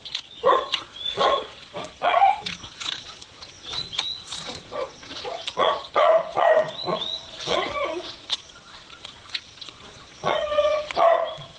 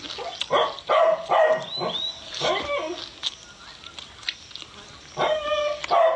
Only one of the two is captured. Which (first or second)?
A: second